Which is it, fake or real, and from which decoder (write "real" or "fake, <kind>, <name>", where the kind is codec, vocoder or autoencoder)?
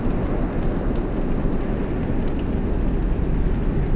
real